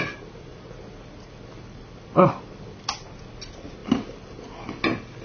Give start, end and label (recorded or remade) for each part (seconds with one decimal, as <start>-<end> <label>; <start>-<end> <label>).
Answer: 0.0-0.5 recorded; 0.5-2.3 remade; 2.3-3.8 recorded; 3.8-4.5 remade; 4.5-5.2 recorded